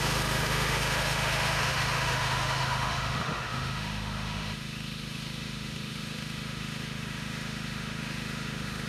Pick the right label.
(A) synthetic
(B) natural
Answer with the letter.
A